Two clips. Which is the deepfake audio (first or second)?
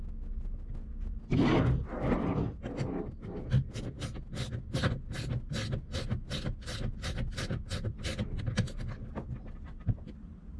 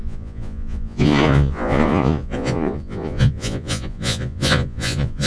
second